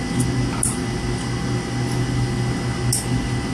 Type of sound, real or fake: real